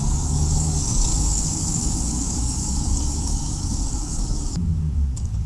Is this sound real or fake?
fake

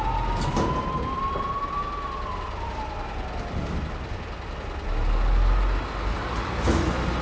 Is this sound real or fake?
real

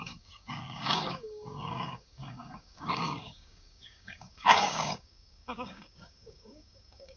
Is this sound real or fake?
fake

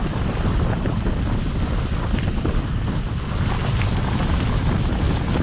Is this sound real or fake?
real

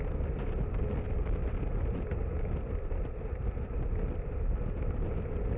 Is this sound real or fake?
real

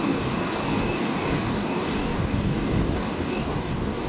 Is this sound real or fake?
fake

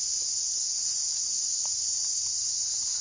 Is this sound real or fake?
real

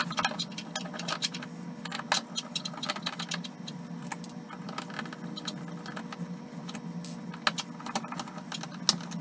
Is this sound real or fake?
real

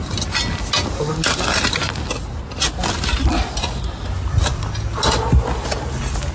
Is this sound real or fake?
real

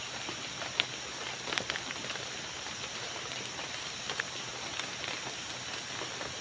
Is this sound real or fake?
real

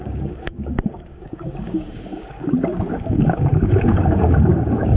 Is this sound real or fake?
fake